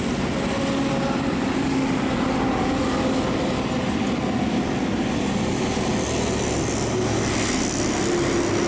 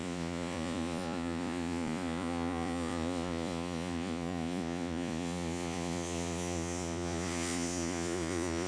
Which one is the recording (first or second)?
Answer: first